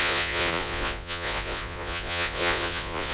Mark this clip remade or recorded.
remade